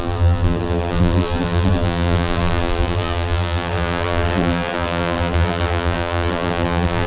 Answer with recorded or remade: remade